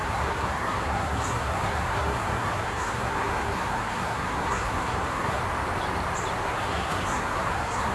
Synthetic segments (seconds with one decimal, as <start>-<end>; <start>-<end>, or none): 0.0-5.4; 6.4-7.9